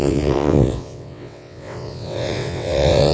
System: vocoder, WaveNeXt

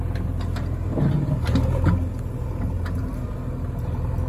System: none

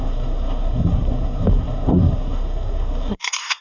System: codec, SNAC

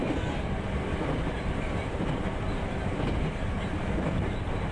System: none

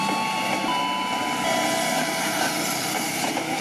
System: none